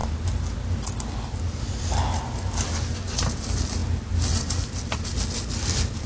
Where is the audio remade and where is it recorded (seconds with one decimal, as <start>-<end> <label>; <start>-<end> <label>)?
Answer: 0.0-6.1 recorded